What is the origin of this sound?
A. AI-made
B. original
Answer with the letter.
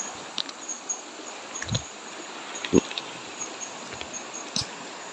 B